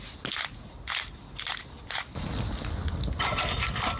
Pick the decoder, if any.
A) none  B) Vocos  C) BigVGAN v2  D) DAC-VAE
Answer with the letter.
A